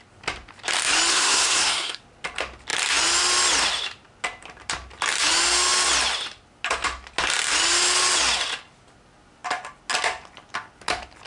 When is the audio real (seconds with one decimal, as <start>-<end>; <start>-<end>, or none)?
0.0-1.1; 2.0-11.3